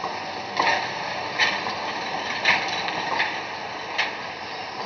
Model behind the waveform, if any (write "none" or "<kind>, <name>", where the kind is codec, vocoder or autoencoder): none